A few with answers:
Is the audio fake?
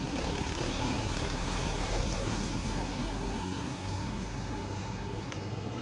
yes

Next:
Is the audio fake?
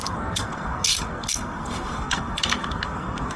yes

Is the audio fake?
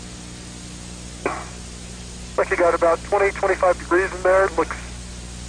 no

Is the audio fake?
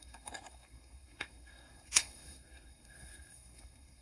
yes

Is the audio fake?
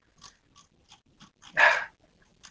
no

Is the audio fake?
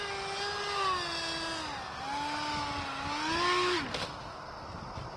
no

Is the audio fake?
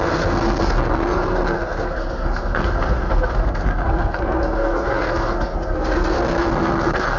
yes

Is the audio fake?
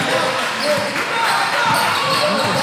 no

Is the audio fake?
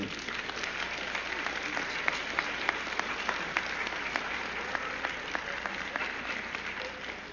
no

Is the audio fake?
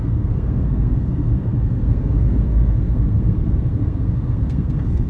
yes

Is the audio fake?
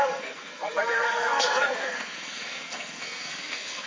yes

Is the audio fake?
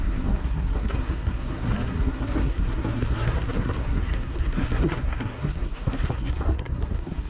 yes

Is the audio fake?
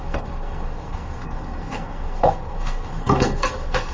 yes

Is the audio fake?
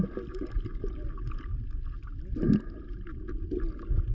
no